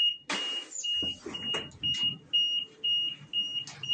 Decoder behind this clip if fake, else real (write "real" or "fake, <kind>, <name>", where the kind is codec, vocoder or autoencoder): real